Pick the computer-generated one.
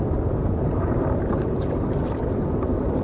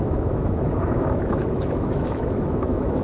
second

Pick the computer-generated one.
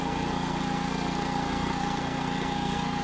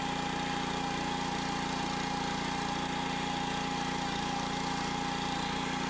first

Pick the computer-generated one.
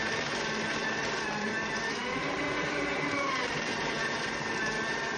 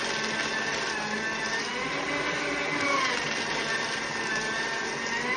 first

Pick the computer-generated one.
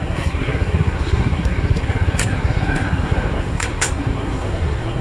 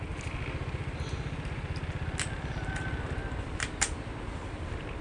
first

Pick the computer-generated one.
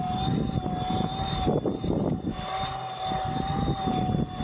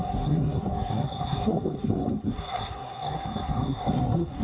second